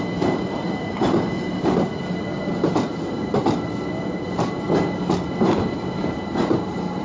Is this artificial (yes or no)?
no